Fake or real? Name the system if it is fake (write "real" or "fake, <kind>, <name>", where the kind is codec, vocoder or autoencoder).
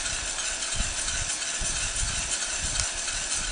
fake, vocoder, BigVGAN v2